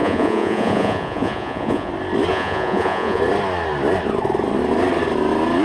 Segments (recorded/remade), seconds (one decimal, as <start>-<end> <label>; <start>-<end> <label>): 0.0-1.9 remade; 1.9-2.3 recorded; 2.3-3.2 remade; 3.2-5.6 recorded